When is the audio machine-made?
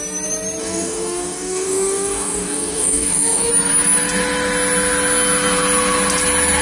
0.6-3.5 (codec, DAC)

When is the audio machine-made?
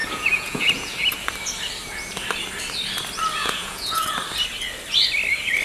0.0-0.9 (vocoder, Vocos); 3.4-4.0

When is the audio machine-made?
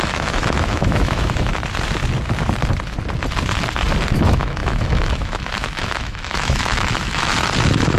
0.0-1.5 (autoencoder, DAC-VAE); 4.1-7.3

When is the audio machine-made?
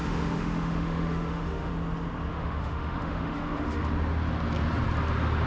0.0-1.7 (autoencoder, DAC-VAE); 2.3-3.9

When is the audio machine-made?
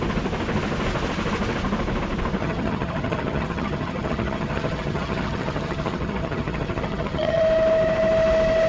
2.4-7.4 (vocoder, HiFi-GAN)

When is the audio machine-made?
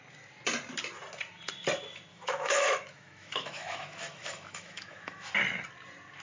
2.1-5.3 (autoencoder, DAC-VAE)